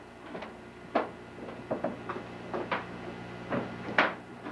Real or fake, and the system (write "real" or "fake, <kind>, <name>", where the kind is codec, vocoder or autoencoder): real